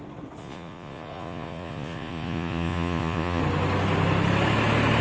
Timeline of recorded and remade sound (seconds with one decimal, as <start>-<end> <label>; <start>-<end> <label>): 0.0-0.4 recorded; 0.4-3.4 remade; 3.4-5.0 recorded